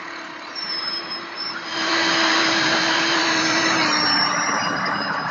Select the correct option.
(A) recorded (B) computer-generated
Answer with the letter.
B